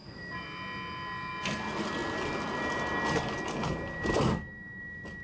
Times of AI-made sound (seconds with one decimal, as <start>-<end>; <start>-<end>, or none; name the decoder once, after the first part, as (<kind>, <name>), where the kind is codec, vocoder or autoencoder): none